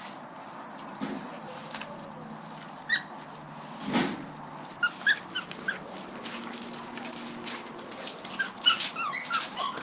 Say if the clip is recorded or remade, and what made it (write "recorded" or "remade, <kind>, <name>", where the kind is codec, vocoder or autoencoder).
recorded